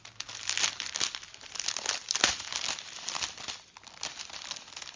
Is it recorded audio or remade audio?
recorded